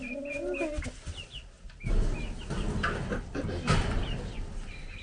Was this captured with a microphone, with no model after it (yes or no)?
yes